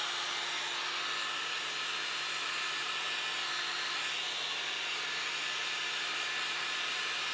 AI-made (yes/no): no